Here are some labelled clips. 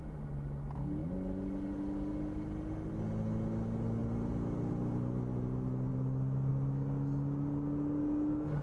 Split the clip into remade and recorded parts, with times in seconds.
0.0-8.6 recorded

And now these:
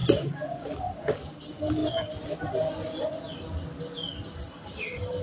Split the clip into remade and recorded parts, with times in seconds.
0.0-0.7 remade; 0.7-5.2 recorded

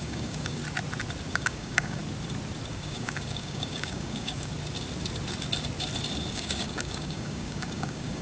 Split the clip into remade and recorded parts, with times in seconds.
0.0-0.6 remade; 0.6-1.3 recorded; 1.3-2.0 remade; 2.0-2.7 recorded; 2.7-4.5 remade; 4.5-6.3 recorded; 6.3-8.2 remade

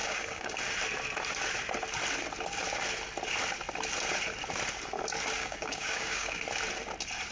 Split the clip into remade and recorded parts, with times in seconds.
0.0-0.6 remade; 0.6-5.4 recorded; 5.4-6.4 remade; 6.4-7.3 recorded

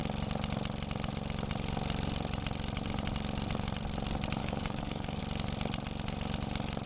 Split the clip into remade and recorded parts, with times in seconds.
0.0-4.4 recorded; 4.4-5.2 remade; 5.2-6.9 recorded

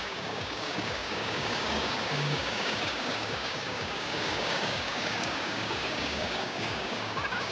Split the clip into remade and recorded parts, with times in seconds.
0.0-7.5 remade

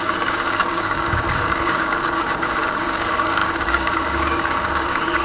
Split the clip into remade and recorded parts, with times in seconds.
0.0-5.2 remade